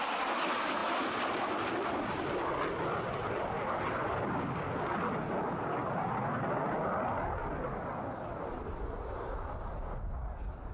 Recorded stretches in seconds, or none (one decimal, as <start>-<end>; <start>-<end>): 0.0-10.7